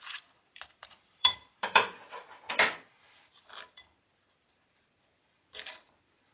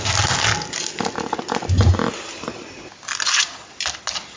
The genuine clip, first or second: second